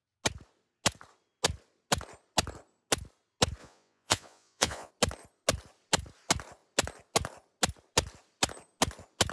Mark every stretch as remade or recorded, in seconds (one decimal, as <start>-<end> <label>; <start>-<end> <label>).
0.0-3.6 recorded; 3.6-4.9 remade; 4.9-9.3 recorded